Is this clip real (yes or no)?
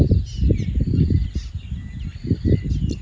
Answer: yes